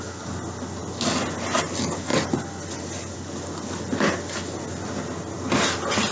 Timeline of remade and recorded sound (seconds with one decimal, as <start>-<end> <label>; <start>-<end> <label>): 0.0-6.1 recorded